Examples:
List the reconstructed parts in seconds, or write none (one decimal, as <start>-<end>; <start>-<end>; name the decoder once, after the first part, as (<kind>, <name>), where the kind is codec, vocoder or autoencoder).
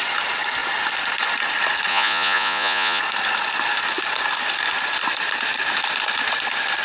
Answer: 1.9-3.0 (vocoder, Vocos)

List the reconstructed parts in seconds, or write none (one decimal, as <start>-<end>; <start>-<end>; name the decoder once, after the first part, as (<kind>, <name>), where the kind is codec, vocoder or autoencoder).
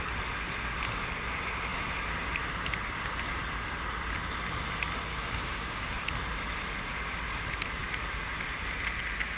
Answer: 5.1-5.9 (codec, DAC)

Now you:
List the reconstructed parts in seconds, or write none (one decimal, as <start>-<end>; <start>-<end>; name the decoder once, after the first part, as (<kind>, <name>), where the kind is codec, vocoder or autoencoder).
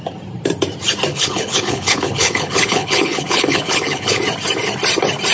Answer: 1.1-4.2 (codec, HILCodec)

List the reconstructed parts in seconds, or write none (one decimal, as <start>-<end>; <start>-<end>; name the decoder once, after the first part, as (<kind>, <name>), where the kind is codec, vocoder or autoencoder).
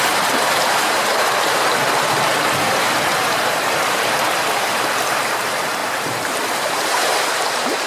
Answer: 0.0-7.9 (vocoder, BigVGAN v2)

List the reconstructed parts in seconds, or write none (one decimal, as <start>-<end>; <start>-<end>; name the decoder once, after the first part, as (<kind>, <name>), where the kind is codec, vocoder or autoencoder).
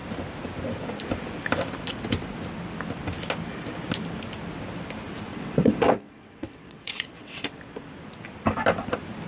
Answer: 5.3-7.6 (vocoder, WaveNeXt)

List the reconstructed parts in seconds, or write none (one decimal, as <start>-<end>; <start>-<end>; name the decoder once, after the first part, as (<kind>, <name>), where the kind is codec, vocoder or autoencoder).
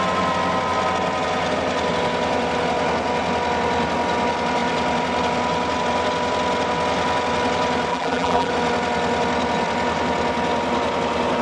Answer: 7.9-8.5 (vocoder, BigVGAN v2)